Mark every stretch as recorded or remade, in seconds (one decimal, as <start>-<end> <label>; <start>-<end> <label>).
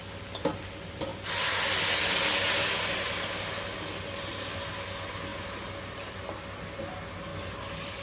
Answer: 0.0-8.0 recorded